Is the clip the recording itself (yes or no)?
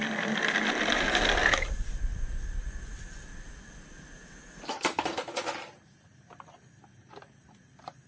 yes